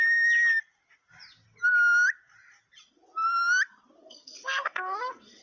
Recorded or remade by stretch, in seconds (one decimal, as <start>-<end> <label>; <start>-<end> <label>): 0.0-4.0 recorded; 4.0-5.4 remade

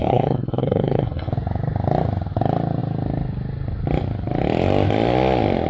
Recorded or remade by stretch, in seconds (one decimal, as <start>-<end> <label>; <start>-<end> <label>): 0.0-1.3 remade; 1.3-5.7 recorded

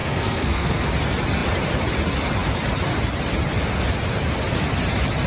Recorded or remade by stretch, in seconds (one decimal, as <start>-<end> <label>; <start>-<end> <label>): 0.0-0.9 remade; 0.9-5.3 recorded

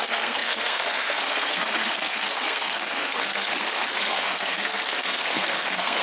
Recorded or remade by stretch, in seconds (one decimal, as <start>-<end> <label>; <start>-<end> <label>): 0.0-6.0 remade

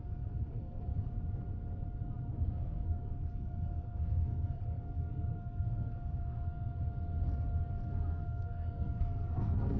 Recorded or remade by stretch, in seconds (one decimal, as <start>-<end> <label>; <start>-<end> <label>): 0.0-0.9 remade; 0.9-2.3 recorded; 2.3-6.8 remade; 6.8-8.1 recorded; 8.1-9.8 remade